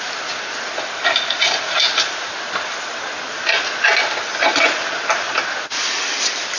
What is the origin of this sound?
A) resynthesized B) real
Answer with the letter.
B